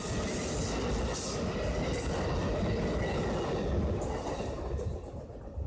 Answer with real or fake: real